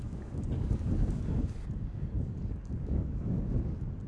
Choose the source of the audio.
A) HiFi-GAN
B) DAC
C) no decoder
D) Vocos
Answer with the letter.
B